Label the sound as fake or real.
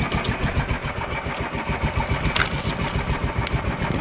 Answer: real